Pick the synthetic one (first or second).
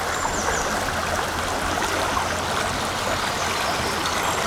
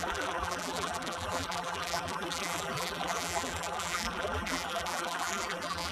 second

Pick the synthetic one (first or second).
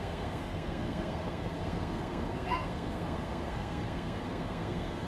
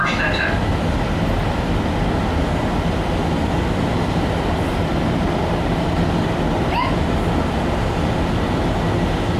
first